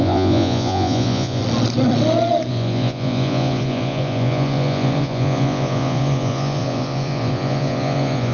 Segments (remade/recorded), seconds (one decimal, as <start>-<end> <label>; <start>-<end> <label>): 0.0-1.4 remade; 1.4-2.5 recorded; 2.5-8.3 remade